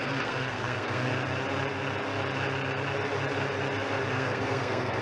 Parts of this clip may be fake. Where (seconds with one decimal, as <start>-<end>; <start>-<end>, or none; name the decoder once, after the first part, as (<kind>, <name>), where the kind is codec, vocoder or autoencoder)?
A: 0.0-1.1 (codec, SNAC); 4.1-5.0